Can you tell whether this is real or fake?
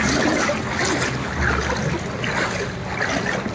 real